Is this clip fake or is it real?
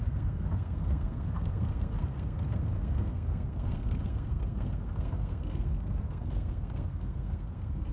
fake